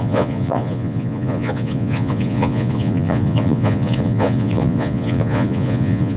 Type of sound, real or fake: fake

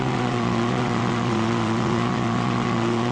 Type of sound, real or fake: fake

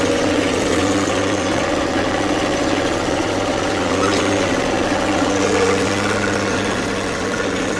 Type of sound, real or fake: fake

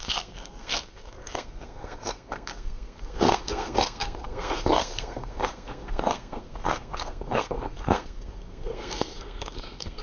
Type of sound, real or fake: fake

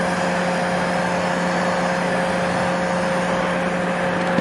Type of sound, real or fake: real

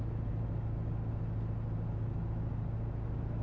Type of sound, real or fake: real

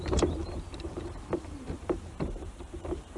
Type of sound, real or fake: fake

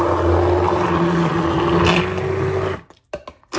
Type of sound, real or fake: real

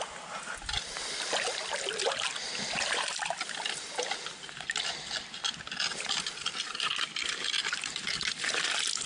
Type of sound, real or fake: real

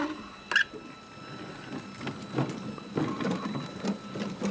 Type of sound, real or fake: real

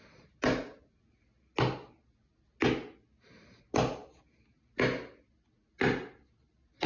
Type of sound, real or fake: real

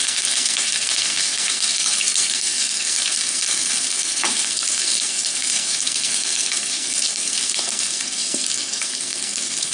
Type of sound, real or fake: fake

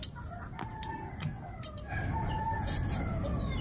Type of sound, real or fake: real